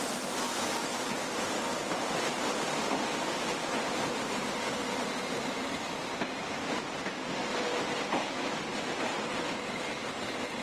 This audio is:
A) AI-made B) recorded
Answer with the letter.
B